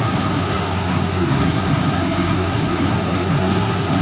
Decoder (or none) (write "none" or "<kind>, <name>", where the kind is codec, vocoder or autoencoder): codec, SNAC